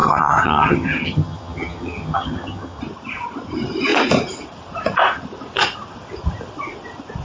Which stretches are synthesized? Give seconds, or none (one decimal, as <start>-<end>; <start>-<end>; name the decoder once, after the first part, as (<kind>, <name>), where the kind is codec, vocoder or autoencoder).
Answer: 0.0-2.8 (vocoder, HiFi-GAN)